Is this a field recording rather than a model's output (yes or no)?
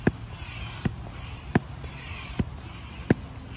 yes